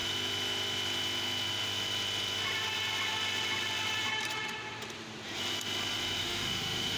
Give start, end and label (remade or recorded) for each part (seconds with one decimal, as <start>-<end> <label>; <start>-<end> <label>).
0.0-6.2 recorded; 6.2-7.0 remade